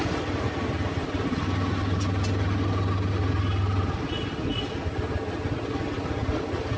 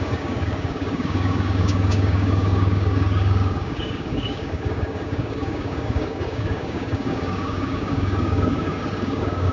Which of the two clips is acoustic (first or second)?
first